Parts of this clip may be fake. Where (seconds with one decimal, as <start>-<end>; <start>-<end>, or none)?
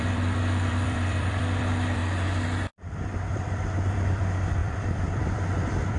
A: 0.0-2.0; 2.7-6.0